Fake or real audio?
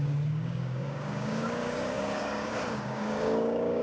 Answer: fake